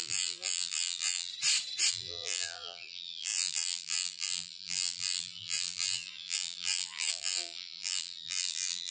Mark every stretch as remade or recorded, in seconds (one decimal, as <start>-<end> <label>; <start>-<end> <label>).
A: 0.0-1.3 remade; 1.3-1.9 recorded; 1.9-8.9 remade